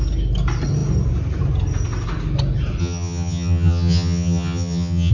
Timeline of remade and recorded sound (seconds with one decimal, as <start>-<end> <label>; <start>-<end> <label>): 0.0-2.8 recorded; 2.8-5.1 remade